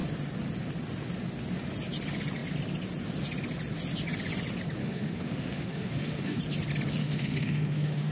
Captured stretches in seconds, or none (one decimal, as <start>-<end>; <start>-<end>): 0.0-4.8; 6.4-7.0